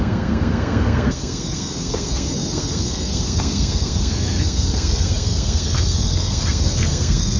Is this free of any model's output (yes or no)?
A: no